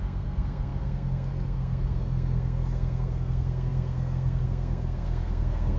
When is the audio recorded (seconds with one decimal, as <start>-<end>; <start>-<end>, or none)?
none